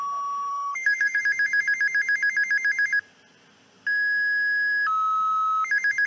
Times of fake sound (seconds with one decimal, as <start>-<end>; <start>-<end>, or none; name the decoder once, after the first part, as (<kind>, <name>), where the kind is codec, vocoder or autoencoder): 0.5-1.2 (codec, SNAC)